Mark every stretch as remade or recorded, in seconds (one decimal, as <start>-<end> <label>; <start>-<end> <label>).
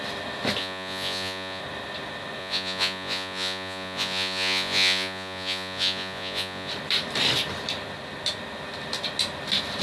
0.0-0.6 recorded; 0.6-1.6 remade; 1.6-2.4 recorded; 2.4-6.7 remade; 6.7-9.8 recorded